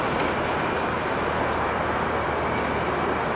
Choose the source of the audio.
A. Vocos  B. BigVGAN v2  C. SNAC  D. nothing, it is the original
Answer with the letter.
D